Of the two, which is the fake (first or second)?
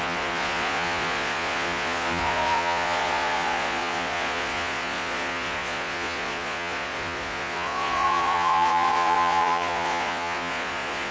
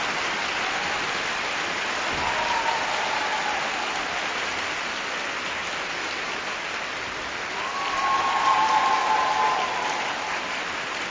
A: first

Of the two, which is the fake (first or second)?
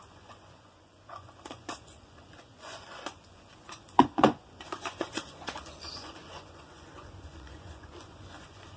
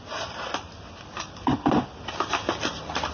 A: first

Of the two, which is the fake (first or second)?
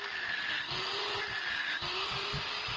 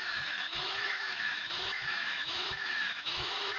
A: second